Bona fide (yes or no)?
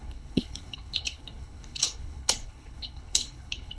no